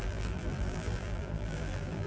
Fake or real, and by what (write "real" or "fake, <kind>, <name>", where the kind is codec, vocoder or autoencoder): fake, vocoder, BigVGAN v2